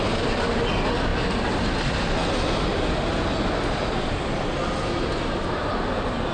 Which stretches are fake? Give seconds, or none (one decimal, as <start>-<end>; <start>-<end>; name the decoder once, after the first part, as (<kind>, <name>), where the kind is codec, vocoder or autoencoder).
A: none